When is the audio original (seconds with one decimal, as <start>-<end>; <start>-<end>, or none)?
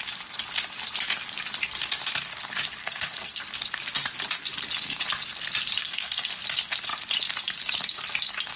0.0-2.8; 3.4-5.8; 6.3-8.6